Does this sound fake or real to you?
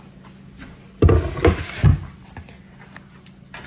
real